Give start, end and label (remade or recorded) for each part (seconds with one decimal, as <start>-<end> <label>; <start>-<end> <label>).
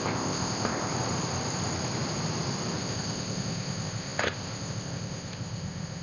0.0-0.9 remade; 0.9-2.8 recorded; 2.8-6.0 remade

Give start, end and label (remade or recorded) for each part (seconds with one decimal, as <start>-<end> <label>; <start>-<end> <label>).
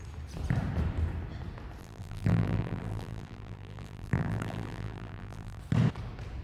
0.0-1.8 recorded; 1.8-5.6 remade; 5.6-6.4 recorded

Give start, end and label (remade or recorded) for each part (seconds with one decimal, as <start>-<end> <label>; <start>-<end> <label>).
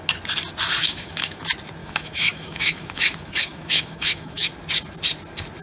0.0-0.8 recorded; 0.8-1.4 remade; 1.4-1.8 recorded; 1.8-4.5 remade; 4.5-5.6 recorded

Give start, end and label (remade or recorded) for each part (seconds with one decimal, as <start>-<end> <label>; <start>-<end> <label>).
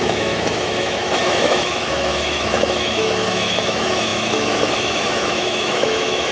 0.0-6.3 remade